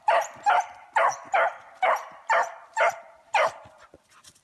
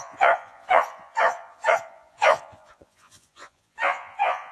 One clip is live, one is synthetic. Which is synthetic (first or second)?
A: second